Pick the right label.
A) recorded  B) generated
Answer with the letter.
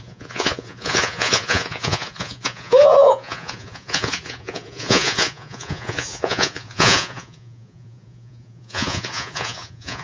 B